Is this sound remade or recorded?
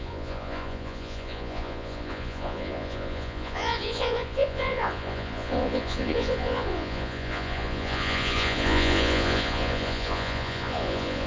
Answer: remade